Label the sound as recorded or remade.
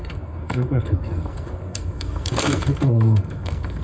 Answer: remade